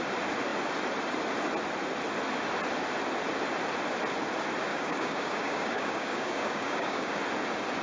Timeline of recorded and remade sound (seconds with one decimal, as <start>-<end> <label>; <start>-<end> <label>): 0.0-4.7 recorded; 4.7-7.2 remade; 7.2-7.8 recorded